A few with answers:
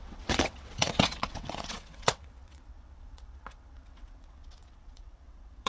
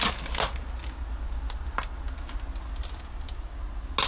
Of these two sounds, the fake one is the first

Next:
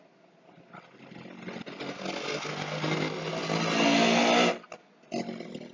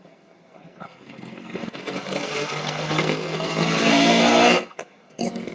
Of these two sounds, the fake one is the second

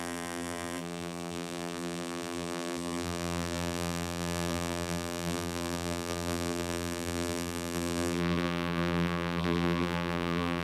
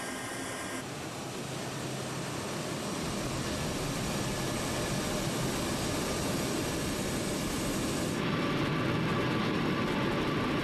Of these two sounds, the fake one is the first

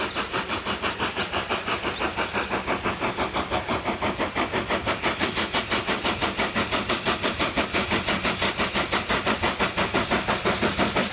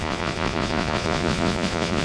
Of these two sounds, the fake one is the second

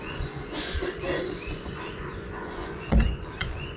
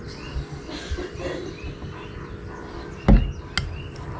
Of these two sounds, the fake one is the first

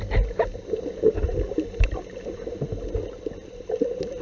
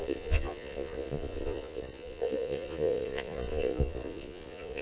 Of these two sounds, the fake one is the second